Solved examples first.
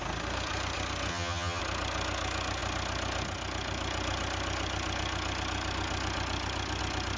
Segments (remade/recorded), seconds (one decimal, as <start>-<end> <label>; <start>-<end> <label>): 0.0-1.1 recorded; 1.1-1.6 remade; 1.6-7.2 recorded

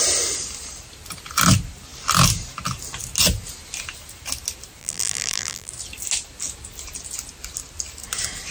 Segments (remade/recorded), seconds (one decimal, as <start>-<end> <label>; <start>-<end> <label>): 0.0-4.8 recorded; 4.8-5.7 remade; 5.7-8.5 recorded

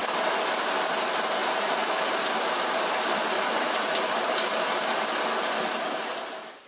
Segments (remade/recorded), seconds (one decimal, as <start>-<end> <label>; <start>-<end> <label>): 0.0-1.4 recorded; 1.4-4.6 remade; 4.6-6.7 recorded